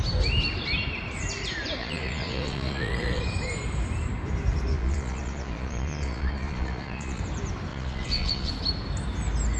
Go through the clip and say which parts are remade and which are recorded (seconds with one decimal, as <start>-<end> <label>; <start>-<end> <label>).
0.0-1.8 recorded; 1.8-3.2 remade; 3.2-4.7 recorded; 4.7-7.2 remade; 7.2-7.7 recorded; 7.7-8.5 remade; 8.5-9.6 recorded